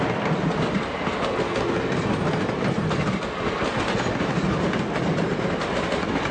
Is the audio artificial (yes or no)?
no